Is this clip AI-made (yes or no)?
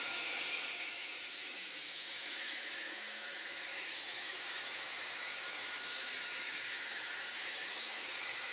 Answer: yes